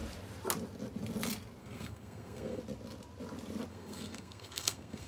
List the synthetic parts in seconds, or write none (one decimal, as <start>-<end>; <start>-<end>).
1.6-2.6; 3.7-5.1